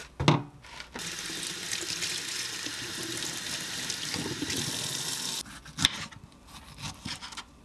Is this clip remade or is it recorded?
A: recorded